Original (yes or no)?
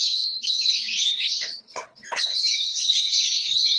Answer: no